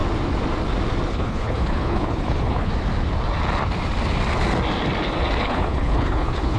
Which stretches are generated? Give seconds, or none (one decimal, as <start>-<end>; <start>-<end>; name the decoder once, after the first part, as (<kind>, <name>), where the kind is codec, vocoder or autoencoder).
1.1-2.7 (codec, HILCodec); 5.4-6.6